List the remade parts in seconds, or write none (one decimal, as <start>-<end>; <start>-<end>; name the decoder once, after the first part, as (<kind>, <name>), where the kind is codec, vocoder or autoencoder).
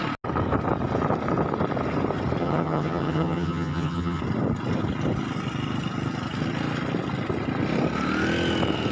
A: 2.4-4.2 (vocoder, HiFi-GAN)